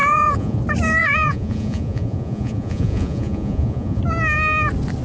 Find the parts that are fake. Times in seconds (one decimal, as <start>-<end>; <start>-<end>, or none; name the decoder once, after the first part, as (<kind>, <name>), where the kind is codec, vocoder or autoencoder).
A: 0.0-0.6 (vocoder, Vocos); 1.0-4.0